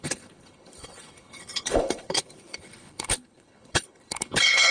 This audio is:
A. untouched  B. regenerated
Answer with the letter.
B